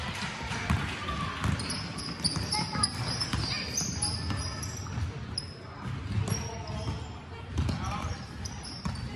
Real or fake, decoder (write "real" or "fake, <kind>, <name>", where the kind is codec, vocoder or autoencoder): real